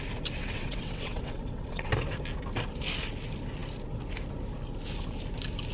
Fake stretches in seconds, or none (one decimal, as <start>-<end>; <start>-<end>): 0.4-1.9